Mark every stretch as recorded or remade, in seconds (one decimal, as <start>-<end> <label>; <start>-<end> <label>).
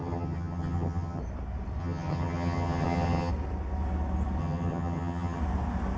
0.0-1.2 remade; 1.2-1.8 recorded; 1.8-3.3 remade; 3.3-4.4 recorded; 4.4-5.4 remade; 5.4-6.0 recorded